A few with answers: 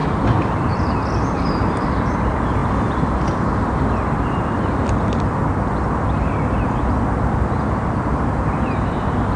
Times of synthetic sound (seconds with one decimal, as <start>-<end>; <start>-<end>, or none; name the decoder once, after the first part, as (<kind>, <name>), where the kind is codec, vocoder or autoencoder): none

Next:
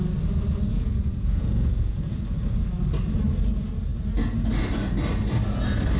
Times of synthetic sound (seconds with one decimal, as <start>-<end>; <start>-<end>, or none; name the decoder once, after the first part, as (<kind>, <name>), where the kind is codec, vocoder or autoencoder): 0.7-2.2 (vocoder, Vocos)

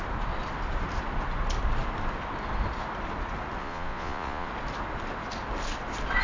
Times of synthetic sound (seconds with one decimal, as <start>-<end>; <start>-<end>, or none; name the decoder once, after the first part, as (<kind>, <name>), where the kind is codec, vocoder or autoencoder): 3.6-4.5 (vocoder, Vocos)

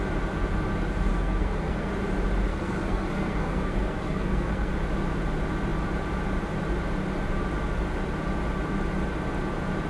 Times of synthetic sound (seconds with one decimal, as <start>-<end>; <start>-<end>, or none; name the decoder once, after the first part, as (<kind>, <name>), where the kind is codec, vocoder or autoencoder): 1.1-1.9 (codec, SNAC); 2.5-4.7